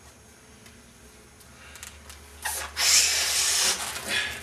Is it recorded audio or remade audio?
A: recorded